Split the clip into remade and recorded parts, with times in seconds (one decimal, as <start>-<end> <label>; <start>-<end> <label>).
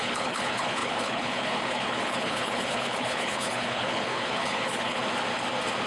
0.0-5.0 remade; 5.0-5.9 recorded